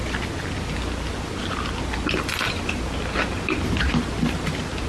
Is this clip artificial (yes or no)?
no